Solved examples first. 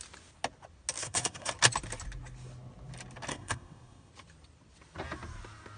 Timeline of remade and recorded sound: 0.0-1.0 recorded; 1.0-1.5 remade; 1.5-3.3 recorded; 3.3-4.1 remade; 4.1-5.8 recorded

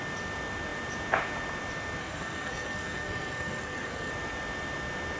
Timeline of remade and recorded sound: 0.0-2.0 recorded; 2.0-4.1 remade; 4.1-5.2 recorded

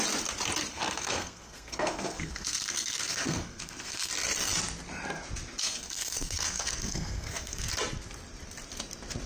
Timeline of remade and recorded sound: 0.0-0.7 recorded; 0.7-4.1 remade; 4.1-5.6 recorded; 5.6-7.7 remade; 7.7-9.3 recorded

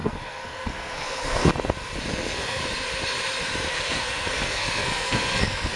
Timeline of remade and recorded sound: 0.0-1.5 remade; 1.5-2.0 recorded; 2.0-2.6 remade; 2.6-3.7 recorded; 3.7-5.8 remade

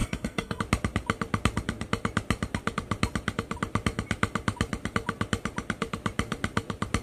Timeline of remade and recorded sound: 0.0-0.6 remade; 0.6-7.0 recorded